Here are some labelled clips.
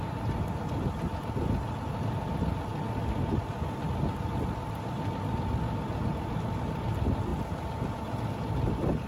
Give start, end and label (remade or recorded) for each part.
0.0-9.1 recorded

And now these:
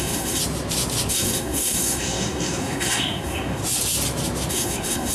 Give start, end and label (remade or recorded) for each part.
0.0-0.4 remade; 0.4-1.1 recorded; 1.1-3.6 remade; 3.6-4.5 recorded; 4.5-5.1 remade

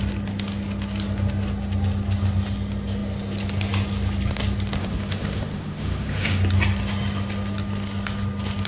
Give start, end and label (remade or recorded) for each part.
0.0-4.8 recorded; 4.8-6.4 remade; 6.4-8.7 recorded

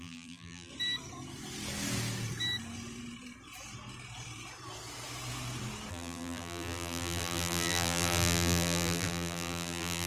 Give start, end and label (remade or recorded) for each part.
0.0-0.7 remade; 0.7-5.9 recorded; 5.9-10.1 remade